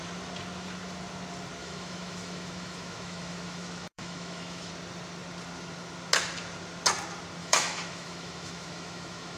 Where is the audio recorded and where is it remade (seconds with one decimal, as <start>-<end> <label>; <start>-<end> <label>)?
0.0-1.6 recorded; 1.6-4.7 remade; 4.7-7.4 recorded; 7.4-9.4 remade